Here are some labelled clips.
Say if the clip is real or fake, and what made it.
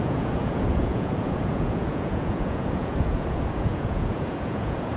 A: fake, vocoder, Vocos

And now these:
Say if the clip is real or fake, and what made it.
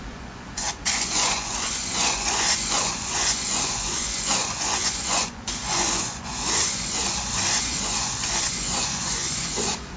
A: fake, vocoder, Vocos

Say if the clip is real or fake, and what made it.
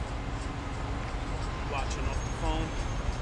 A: real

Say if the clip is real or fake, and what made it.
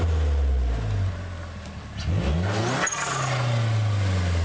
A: real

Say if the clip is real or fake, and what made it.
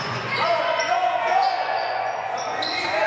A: fake, vocoder, Vocos